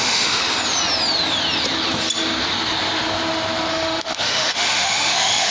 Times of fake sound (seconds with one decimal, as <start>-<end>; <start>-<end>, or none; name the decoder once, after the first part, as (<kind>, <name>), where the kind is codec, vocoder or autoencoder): 0.0-0.4 (autoencoder, DAC-VAE); 3.7-5.5